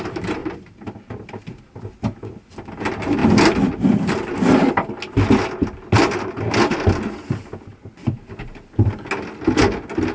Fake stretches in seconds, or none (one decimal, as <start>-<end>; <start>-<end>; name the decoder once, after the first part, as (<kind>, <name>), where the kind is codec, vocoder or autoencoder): 0.4-1.8 (vocoder, BigVGAN v2); 7.7-8.2